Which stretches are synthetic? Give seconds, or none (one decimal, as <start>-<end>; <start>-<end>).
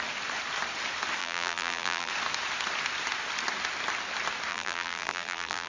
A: 1.2-2.1; 4.5-5.7